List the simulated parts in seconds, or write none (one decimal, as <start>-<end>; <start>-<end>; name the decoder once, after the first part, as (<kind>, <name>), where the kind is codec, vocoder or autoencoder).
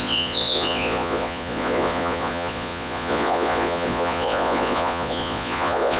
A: 0.0-6.0 (vocoder, Vocos)